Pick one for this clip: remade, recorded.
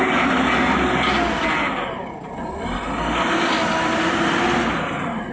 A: recorded